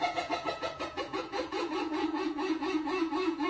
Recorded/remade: remade